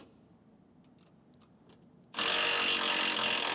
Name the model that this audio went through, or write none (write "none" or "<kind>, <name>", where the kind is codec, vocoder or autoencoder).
none